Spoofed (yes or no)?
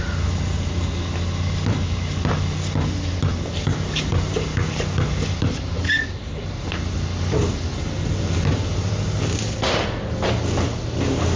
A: no